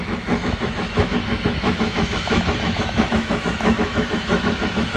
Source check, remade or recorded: remade